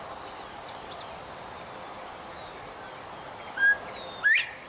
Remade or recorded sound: recorded